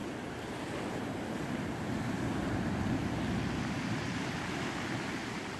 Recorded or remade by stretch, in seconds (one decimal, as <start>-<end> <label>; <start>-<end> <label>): 0.0-3.4 recorded; 3.4-5.6 remade